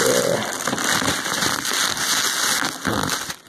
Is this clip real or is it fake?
real